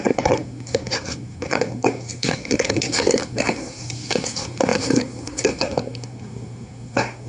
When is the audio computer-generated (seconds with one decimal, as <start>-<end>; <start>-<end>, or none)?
0.0-7.3